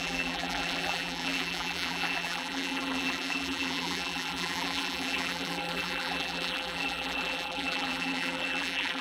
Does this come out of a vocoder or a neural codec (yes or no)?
yes